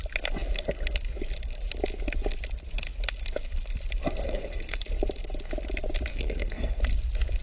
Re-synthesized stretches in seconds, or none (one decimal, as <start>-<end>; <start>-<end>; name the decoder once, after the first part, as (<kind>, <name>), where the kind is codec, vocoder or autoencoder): 4.2-4.8 (codec, SNAC); 6.1-6.8